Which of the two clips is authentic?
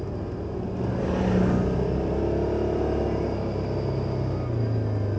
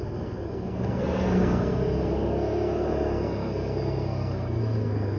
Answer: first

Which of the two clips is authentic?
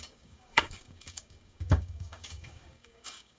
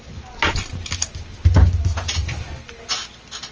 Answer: second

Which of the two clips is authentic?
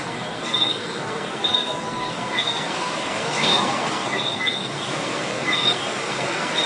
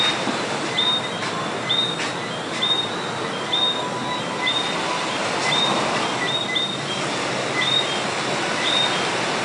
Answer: second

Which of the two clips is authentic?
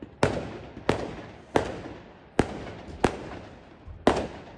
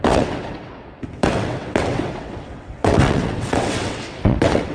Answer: first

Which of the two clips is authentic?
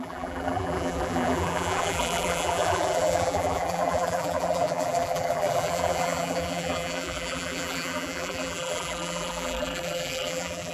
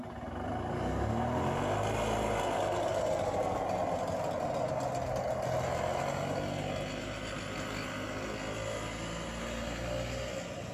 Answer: second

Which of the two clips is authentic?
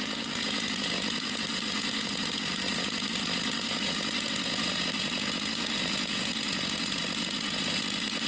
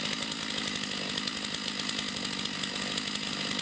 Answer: second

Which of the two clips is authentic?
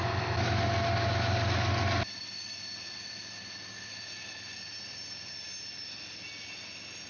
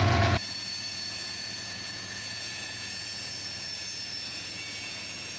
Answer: first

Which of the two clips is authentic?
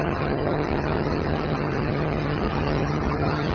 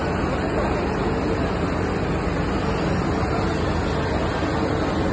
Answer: second